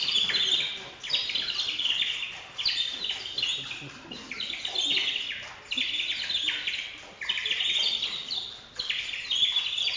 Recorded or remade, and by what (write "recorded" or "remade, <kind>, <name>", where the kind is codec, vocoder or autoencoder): recorded